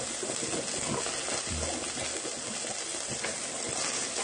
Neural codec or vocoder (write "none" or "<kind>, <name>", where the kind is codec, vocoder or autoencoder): none